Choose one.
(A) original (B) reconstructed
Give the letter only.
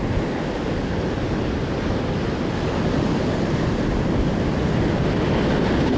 A